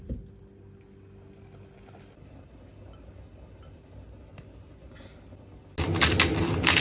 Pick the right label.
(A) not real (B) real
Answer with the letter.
B